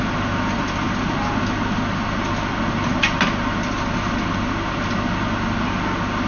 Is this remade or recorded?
recorded